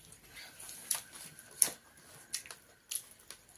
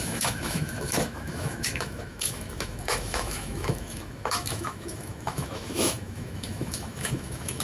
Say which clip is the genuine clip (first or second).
first